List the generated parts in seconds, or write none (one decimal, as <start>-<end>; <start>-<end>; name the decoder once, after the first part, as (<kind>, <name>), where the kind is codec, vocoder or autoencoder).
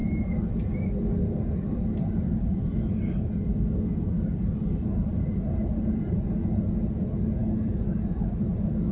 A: none